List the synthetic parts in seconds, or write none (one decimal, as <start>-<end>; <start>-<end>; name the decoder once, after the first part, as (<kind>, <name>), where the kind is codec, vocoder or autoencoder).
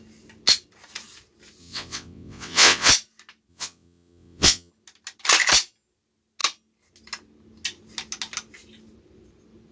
1.6-2.9 (vocoder, WaveNeXt); 3.5-4.7